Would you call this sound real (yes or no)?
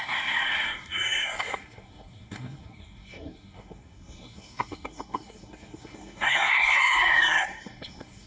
no